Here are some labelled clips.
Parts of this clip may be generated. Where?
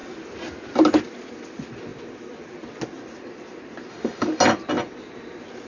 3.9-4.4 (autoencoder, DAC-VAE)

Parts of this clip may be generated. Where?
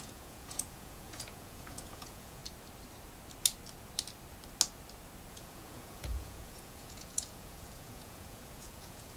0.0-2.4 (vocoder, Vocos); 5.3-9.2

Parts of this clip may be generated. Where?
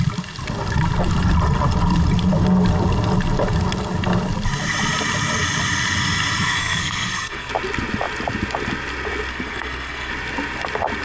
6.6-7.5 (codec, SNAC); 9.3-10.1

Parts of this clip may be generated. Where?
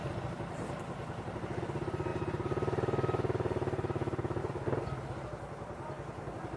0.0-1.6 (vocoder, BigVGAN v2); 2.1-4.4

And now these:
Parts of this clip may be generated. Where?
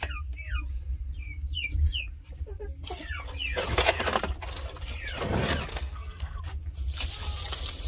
5.7-6.4 (codec, SNAC)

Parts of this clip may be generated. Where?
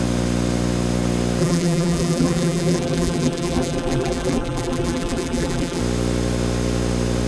1.4-5.8 (vocoder, BigVGAN v2)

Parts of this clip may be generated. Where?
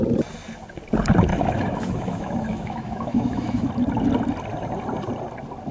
1.3-3.7 (autoencoder, DAC-VAE)